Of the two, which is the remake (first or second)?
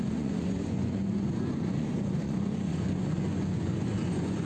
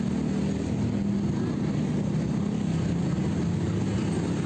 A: first